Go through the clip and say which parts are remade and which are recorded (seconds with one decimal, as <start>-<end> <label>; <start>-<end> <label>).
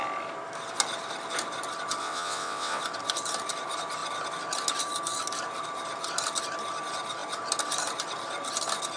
0.0-2.0 recorded; 2.0-2.8 remade; 2.8-9.0 recorded